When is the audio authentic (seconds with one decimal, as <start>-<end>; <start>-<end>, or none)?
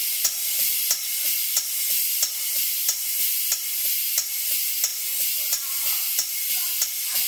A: 3.2-4.9; 6.5-7.3